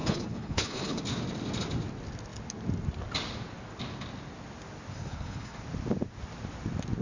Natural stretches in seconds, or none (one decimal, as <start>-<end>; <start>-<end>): 1.0-4.9; 5.6-7.0

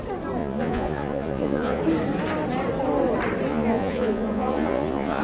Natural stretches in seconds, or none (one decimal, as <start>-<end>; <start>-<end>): 0.0-0.4; 1.8-3.5

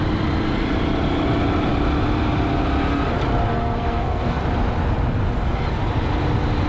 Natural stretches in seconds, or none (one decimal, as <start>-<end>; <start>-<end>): 0.0-3.5; 4.4-6.7

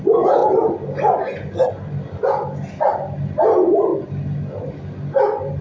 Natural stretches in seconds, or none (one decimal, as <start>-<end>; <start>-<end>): 0.0-5.6